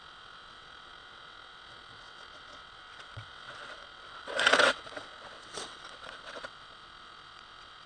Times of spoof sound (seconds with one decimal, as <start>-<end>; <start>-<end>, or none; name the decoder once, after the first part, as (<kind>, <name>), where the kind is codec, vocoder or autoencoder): 0.0-7.9 (vocoder, WaveNeXt)